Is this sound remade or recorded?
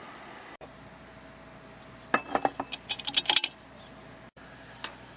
recorded